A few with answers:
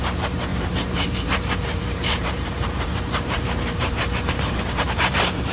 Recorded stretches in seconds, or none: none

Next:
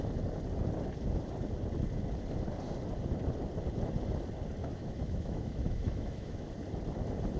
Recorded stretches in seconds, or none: 0.0-4.6; 6.5-7.4

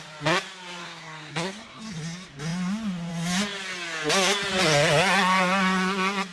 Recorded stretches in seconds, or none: 0.0-0.8; 1.8-6.3